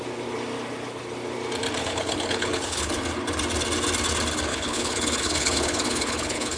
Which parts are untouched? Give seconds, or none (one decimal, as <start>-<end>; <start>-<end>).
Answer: 0.0-1.8; 2.9-4.5

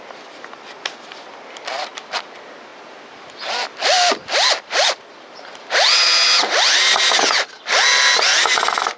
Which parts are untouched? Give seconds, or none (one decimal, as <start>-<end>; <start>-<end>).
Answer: 0.0-9.0

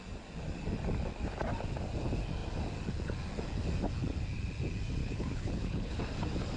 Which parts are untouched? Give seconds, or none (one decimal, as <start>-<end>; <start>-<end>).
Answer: 0.0-5.0; 6.0-6.6

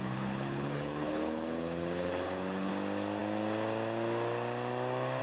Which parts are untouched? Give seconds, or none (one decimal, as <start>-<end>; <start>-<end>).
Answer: 2.7-5.2

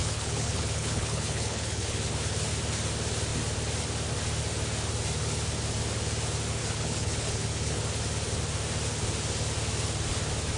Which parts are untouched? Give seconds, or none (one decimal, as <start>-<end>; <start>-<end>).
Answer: 2.1-6.6; 7.8-10.6

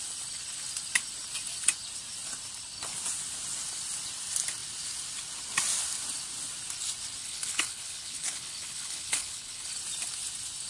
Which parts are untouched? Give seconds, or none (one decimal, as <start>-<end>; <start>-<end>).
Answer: 0.0-7.2; 9.7-10.7

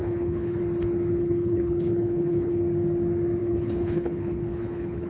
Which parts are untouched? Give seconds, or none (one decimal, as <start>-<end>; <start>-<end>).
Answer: 0.6-1.1; 2.6-3.4

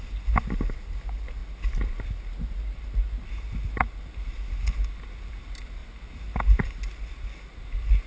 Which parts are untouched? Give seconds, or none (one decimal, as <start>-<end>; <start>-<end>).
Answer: 0.0-8.1